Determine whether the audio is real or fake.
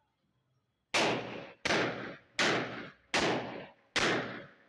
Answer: real